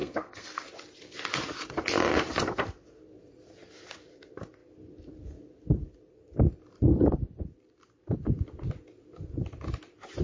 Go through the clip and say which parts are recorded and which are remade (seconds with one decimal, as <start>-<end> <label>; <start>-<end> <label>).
0.0-0.7 remade; 0.7-10.2 recorded